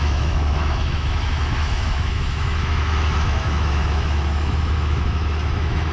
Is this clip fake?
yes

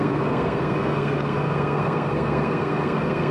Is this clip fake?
yes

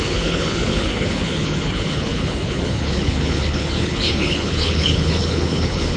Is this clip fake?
yes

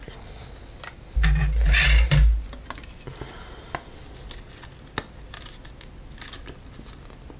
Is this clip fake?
no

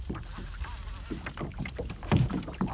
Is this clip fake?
no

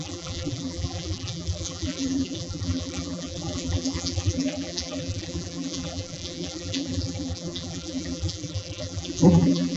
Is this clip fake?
yes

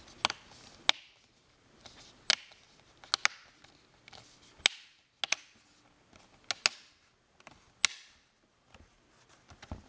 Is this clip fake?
no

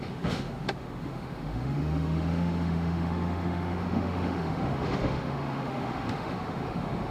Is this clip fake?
yes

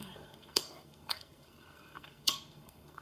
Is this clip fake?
yes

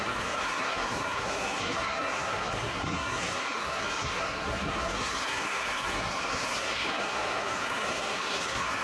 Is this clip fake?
yes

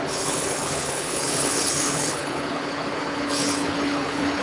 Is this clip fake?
yes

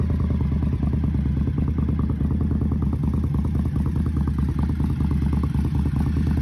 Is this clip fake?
no